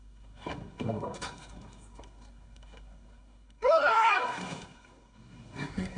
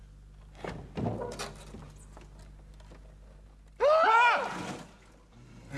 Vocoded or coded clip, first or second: first